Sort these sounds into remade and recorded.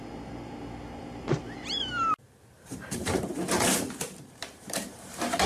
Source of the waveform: remade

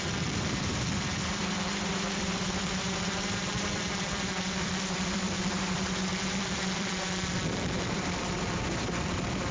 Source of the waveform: remade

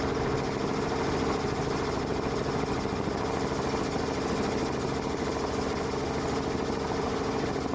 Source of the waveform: recorded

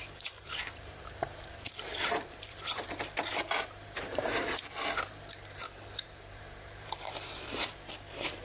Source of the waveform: remade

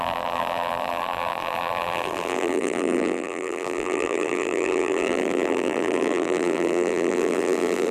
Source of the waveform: remade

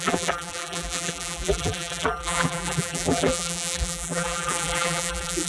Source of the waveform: remade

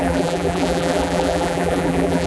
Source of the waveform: remade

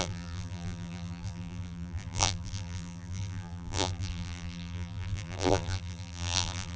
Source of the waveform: remade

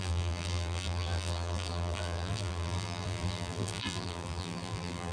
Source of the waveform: remade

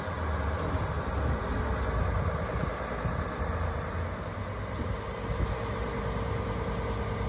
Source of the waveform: recorded